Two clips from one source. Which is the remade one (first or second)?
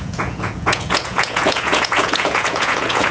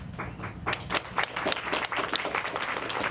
first